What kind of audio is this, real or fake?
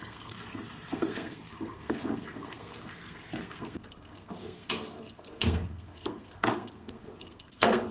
fake